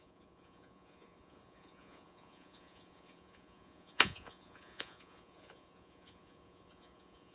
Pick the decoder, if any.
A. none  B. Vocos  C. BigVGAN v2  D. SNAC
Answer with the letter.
B